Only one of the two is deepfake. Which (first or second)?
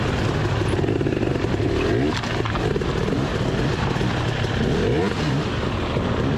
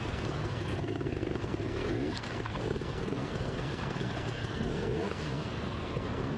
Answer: second